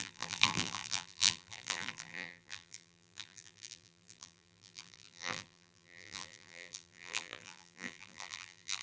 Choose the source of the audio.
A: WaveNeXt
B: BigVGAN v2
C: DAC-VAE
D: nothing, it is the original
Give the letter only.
B